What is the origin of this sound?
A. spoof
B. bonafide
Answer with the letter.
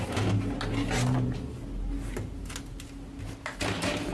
B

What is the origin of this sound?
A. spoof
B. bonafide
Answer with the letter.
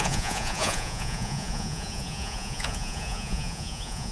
A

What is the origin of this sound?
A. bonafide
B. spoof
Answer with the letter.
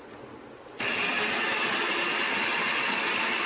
A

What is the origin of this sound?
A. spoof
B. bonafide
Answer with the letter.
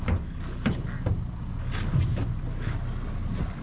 B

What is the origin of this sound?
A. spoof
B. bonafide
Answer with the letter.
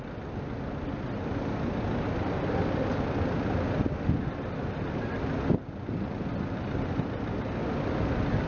B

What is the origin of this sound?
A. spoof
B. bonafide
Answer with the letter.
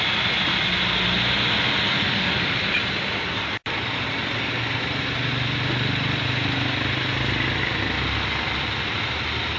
B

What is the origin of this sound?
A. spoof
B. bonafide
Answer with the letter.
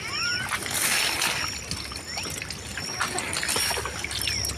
B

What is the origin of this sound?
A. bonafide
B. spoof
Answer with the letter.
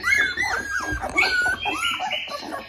A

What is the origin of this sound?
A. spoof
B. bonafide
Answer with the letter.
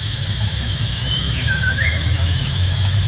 A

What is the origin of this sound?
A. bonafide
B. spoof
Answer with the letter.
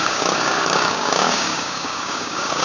B